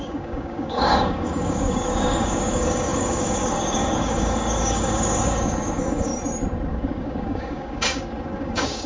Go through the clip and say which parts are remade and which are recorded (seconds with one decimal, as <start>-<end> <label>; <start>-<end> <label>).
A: 0.0-6.1 remade; 6.1-6.7 recorded; 6.7-8.9 remade